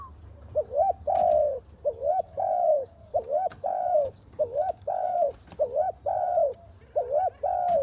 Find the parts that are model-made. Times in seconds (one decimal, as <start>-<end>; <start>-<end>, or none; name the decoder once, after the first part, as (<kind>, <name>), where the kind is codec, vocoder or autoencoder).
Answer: 2.0-5.3 (codec, DAC)